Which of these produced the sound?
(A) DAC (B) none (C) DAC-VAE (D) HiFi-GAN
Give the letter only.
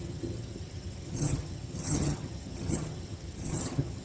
D